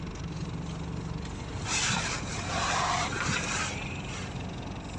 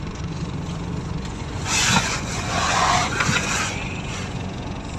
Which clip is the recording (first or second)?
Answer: first